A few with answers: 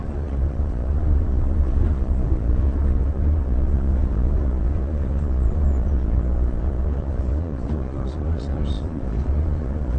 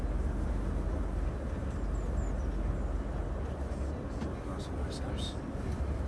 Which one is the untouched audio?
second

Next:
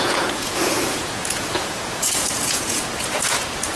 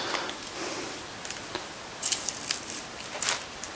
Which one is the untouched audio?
second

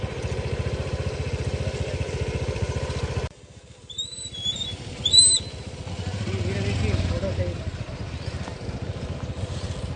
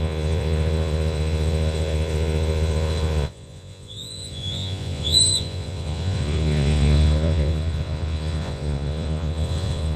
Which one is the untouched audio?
first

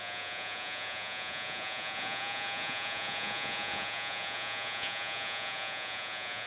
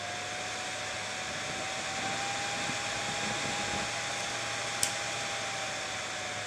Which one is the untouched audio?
second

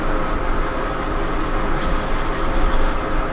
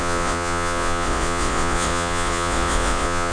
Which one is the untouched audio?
first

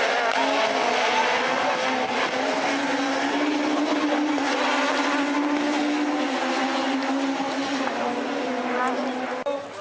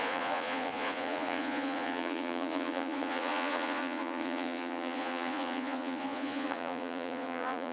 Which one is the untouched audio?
first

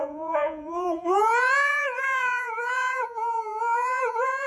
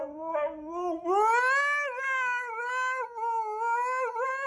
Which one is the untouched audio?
second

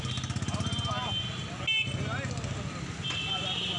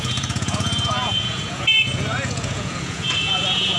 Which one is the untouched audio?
first